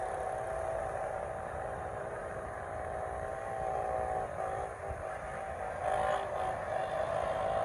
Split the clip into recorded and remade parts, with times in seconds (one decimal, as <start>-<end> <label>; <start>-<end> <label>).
0.0-7.6 recorded